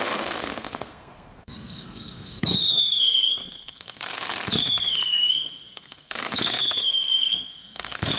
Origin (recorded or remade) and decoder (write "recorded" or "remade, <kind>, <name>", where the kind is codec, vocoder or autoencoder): remade, codec, SNAC